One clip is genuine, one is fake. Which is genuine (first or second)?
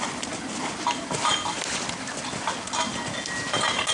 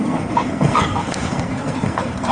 first